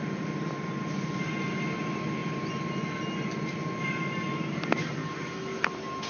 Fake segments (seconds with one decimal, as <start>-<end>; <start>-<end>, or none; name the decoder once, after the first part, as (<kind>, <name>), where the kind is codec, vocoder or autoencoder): none